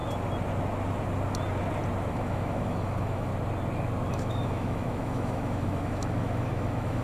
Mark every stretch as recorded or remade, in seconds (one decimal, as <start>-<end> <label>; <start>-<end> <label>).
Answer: 0.0-2.1 recorded; 2.1-3.3 remade; 3.3-4.1 recorded; 4.1-7.0 remade